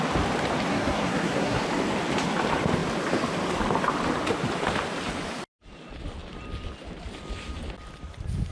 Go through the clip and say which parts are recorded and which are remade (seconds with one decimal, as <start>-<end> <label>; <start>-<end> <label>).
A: 0.0-0.7 recorded; 0.7-1.6 remade; 1.6-8.5 recorded